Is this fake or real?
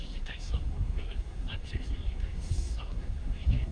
fake